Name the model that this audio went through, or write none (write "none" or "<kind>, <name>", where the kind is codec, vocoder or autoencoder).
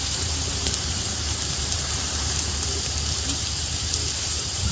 vocoder, BigVGAN v2